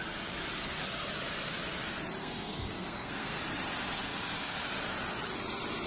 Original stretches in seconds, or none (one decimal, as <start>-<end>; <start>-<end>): 0.0-2.2; 3.4-5.9